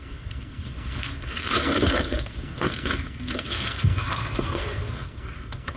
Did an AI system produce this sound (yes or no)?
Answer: yes